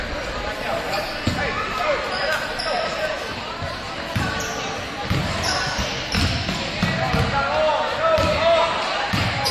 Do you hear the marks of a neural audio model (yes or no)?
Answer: no